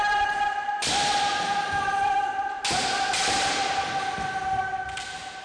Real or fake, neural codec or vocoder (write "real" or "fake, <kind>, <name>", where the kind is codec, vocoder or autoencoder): real